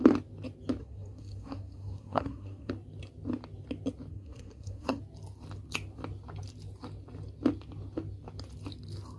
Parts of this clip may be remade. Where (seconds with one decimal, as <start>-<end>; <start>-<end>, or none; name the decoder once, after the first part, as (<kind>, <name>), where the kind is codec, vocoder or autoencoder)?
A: 0.8-2.7 (codec, SNAC); 4.1-5.0